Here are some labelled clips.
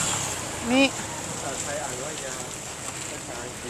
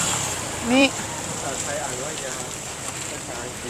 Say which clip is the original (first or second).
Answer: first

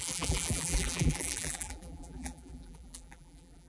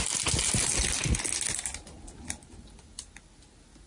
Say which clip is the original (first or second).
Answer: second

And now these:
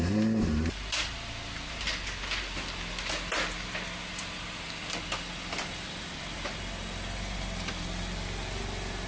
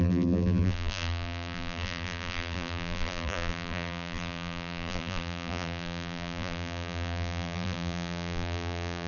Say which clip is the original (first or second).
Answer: first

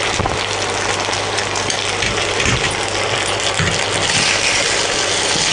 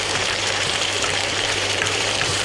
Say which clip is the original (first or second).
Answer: first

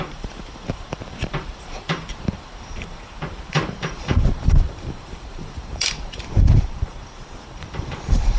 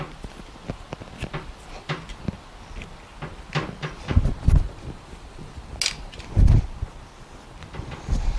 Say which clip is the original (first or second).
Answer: second